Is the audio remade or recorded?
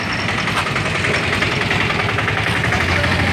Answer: recorded